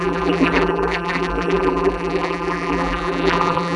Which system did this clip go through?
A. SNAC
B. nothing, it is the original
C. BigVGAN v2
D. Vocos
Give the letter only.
C